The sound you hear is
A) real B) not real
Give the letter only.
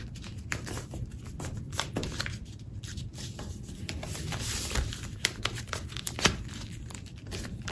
B